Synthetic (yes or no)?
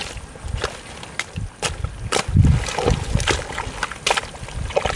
no